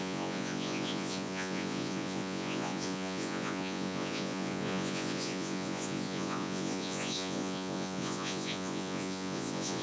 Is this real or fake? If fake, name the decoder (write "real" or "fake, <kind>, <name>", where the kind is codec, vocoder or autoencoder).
fake, vocoder, Vocos